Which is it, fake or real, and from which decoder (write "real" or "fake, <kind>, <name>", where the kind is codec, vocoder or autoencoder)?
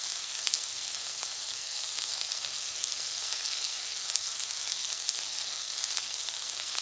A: fake, codec, SNAC